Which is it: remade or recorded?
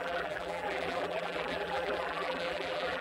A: remade